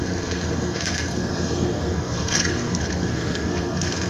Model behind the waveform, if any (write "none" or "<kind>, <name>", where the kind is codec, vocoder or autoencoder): codec, SNAC